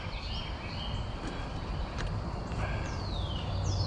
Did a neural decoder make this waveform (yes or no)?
no